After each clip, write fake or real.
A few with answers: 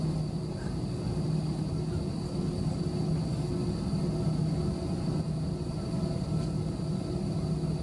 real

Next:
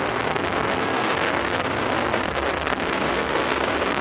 fake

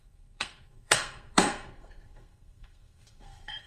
fake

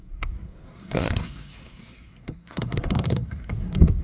fake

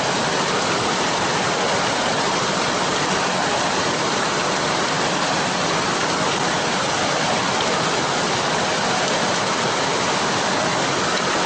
real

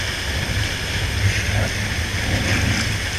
real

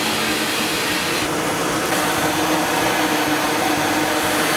real